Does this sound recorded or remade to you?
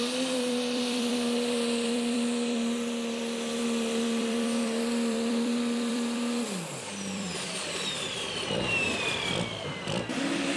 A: remade